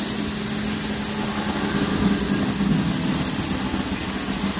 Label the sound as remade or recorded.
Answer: recorded